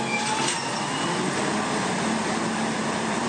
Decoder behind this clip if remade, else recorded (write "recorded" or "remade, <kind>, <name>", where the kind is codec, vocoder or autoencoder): recorded